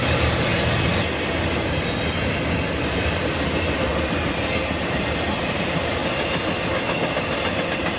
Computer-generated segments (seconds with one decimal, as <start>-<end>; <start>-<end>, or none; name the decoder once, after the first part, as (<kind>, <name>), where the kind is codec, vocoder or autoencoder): 0.0-0.5 (vocoder, BigVGAN v2); 2.7-3.9; 4.9-6.0; 7.6-8.0